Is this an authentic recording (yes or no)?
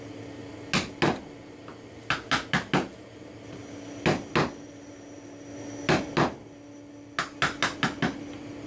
yes